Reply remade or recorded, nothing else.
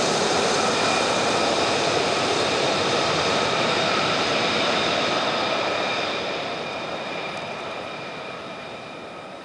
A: remade